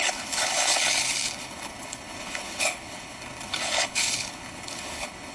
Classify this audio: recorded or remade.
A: remade